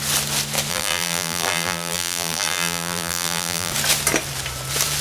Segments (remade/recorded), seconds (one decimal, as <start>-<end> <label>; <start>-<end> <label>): 0.0-0.7 recorded; 0.7-3.7 remade; 3.7-5.0 recorded